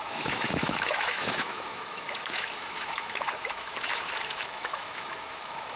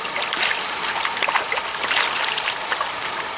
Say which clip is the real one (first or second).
second